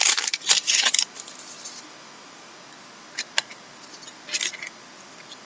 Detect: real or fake real